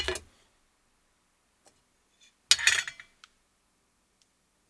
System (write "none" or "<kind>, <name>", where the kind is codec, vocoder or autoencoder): none